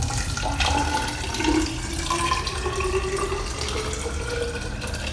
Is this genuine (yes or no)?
yes